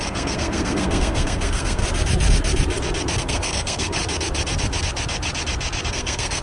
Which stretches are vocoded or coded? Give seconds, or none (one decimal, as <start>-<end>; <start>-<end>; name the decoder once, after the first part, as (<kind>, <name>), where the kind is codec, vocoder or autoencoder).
0.0-1.8 (codec, SNAC); 3.2-4.0; 5.9-6.4